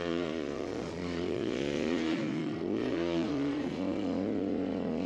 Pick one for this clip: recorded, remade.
remade